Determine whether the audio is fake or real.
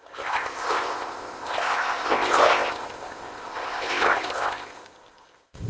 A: fake